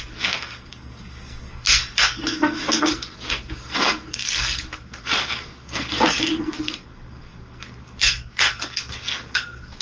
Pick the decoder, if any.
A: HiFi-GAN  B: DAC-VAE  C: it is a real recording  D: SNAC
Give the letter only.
D